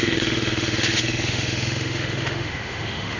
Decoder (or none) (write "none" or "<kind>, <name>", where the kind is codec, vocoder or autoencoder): autoencoder, DAC-VAE